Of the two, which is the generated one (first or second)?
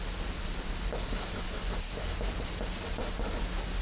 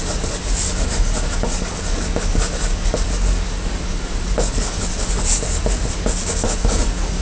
second